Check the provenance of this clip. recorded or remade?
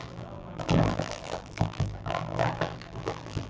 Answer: remade